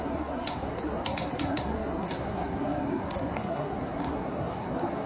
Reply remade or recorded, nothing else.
remade